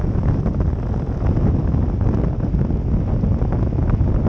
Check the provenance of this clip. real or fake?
real